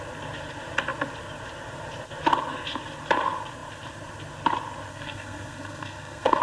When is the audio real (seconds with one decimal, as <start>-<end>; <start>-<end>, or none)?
0.0-4.9